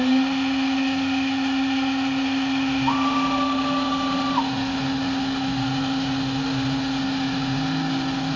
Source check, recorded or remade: recorded